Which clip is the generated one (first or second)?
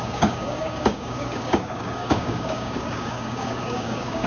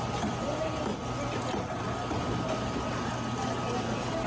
first